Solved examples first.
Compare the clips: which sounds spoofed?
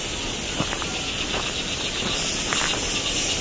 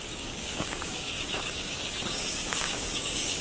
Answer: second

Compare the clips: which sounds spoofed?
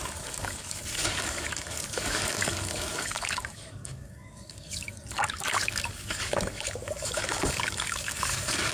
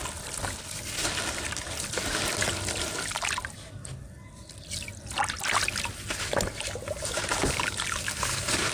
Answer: first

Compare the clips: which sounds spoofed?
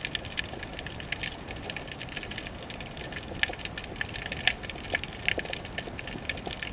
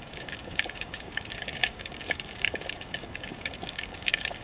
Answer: second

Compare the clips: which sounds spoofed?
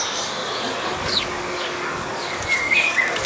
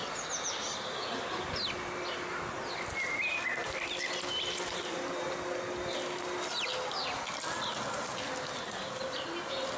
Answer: first